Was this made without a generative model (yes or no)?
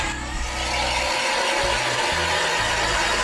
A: yes